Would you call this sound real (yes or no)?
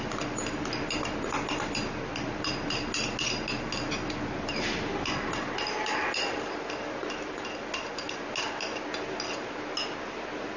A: yes